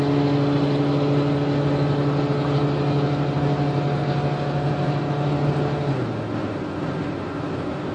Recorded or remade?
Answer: recorded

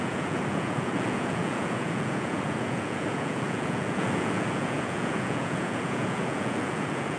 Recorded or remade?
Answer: remade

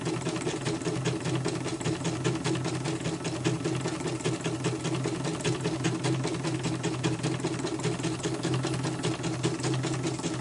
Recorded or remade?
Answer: recorded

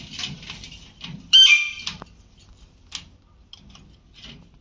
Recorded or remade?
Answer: recorded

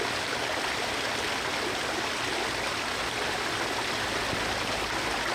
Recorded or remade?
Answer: recorded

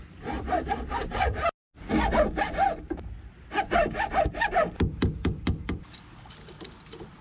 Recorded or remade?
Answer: recorded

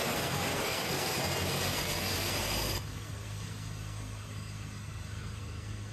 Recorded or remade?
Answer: remade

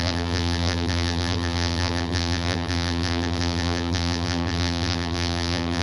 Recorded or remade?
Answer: remade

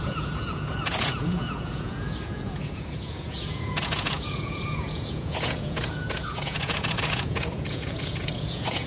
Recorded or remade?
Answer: remade